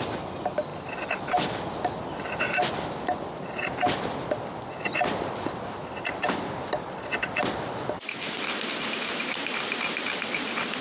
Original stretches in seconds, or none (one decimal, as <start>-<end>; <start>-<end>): 0.0-10.8